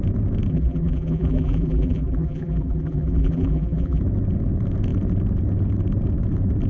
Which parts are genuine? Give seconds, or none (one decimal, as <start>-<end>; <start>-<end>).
0.0-0.5; 4.0-6.7